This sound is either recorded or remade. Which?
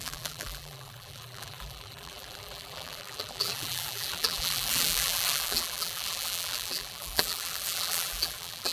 remade